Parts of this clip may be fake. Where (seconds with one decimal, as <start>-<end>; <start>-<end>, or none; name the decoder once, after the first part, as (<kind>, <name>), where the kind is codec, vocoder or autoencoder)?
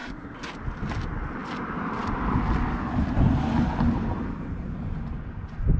0.0-0.5 (codec, SNAC)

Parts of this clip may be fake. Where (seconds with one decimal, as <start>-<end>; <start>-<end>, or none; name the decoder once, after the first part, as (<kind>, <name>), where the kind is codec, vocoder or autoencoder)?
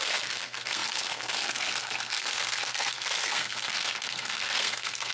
0.0-5.1 (codec, SNAC)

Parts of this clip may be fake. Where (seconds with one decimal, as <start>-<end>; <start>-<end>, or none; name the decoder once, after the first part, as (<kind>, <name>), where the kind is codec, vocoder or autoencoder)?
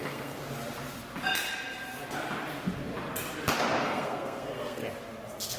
0.0-0.4 (codec, SNAC); 3.8-4.8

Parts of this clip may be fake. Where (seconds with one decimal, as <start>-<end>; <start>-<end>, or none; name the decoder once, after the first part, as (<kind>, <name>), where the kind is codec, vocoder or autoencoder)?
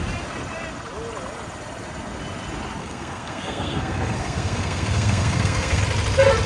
2.8-5.8 (codec, SNAC)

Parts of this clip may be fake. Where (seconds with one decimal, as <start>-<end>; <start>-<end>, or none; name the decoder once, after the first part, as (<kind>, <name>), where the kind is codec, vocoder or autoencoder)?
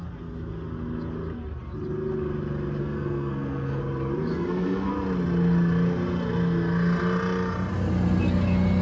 2.8-3.8 (codec, SNAC); 4.3-4.9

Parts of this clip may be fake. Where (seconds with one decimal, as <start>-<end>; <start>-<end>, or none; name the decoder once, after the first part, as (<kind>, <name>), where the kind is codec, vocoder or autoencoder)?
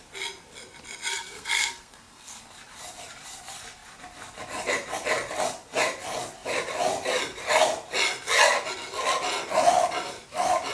1.1-2.4 (codec, SNAC)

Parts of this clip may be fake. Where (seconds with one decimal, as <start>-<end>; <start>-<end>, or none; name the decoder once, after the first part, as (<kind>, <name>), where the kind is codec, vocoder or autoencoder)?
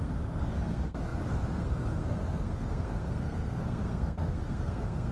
0.0-5.1 (codec, SNAC)